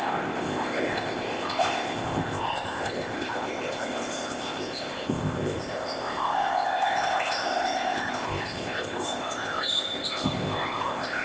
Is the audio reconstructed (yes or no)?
yes